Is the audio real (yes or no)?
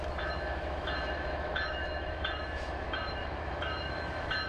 no